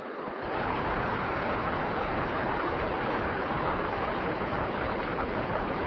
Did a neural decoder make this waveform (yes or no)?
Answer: yes